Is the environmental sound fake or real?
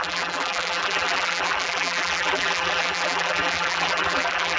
fake